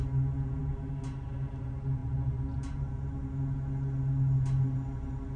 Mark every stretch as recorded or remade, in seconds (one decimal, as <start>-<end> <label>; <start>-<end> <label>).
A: 0.0-5.4 recorded